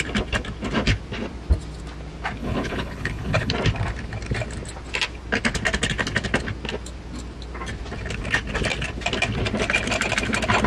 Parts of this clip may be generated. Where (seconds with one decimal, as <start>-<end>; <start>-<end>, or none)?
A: 2.4-3.5